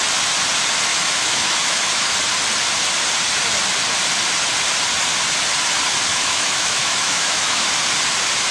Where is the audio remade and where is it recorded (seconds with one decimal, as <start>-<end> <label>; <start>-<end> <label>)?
0.0-0.9 recorded; 0.9-2.1 remade; 2.1-6.1 recorded; 6.1-7.7 remade; 7.7-8.5 recorded